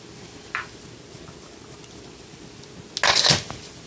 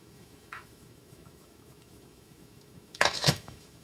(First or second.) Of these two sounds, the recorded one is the first